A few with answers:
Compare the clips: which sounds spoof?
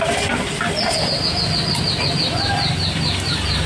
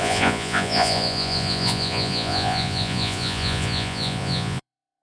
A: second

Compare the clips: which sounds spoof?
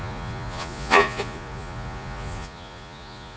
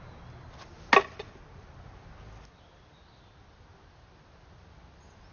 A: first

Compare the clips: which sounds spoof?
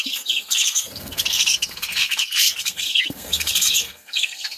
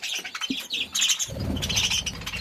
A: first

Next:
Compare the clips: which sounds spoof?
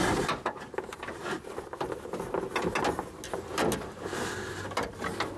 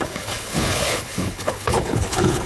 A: second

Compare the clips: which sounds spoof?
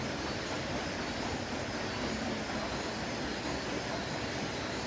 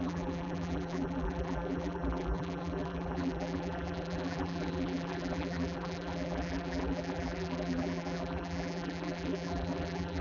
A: second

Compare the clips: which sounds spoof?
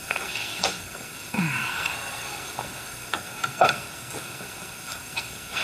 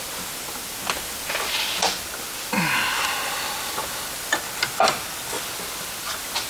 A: first